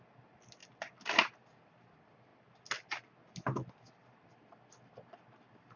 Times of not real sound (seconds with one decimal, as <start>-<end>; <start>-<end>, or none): none